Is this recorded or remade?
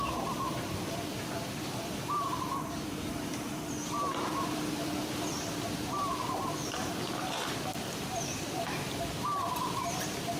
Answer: remade